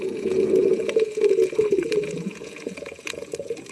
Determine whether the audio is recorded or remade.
remade